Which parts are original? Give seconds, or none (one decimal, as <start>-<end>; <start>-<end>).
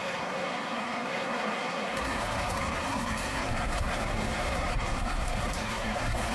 none